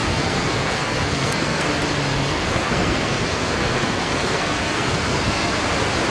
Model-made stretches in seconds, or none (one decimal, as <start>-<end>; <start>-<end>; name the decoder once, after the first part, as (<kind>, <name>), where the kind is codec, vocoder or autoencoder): 0.0-1.7 (codec, SNAC); 2.1-5.6